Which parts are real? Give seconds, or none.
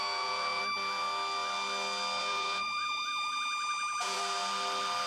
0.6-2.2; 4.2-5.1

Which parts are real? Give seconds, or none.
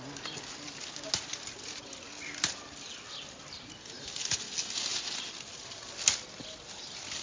0.0-7.2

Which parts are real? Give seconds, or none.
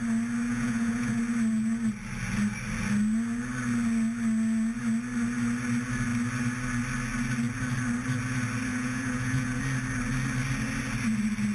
0.0-0.5; 1.2-8.7; 9.6-11.5